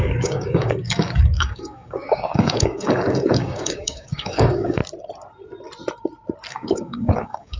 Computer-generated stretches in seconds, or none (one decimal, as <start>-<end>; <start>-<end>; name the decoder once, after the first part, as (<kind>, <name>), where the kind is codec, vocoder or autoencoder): 0.0-4.8 (codec, DAC); 6.5-7.6